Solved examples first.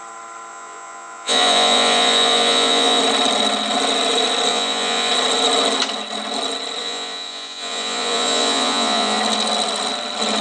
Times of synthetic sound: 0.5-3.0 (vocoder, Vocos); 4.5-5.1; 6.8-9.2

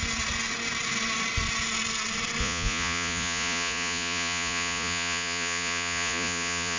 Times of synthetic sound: 2.4-6.8 (vocoder, Vocos)

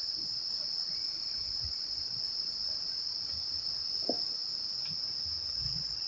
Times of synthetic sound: 0.0-3.1 (vocoder, Vocos); 3.6-4.0; 5.5-6.1